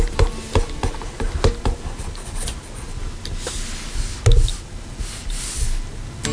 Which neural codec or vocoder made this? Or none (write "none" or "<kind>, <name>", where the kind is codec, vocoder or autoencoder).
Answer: none